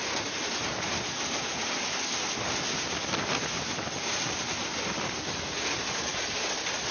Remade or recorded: recorded